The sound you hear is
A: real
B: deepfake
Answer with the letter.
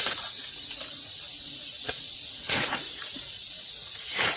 B